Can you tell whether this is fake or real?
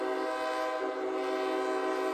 real